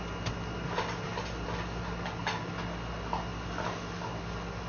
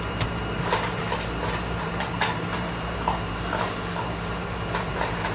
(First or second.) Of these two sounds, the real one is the first